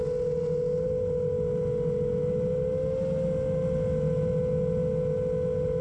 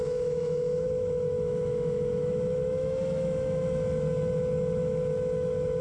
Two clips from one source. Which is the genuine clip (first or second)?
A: first